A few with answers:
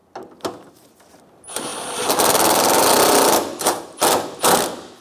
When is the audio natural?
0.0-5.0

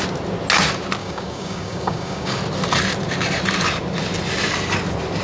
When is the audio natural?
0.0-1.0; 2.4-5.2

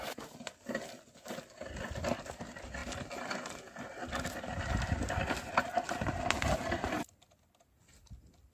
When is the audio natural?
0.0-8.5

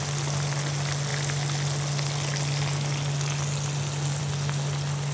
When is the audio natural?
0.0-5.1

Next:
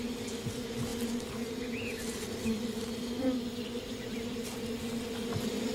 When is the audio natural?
0.0-5.7

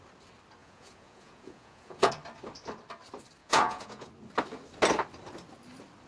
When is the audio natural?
0.0-0.6; 2.1-3.4; 4.1-6.1

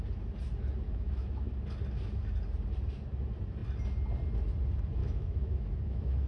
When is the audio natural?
0.0-0.9; 1.5-5.0